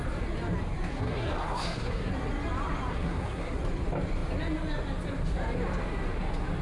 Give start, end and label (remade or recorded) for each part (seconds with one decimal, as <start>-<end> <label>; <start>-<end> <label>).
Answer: 0.0-0.9 recorded; 0.9-2.1 remade; 2.1-2.9 recorded; 2.9-3.6 remade; 3.6-6.6 recorded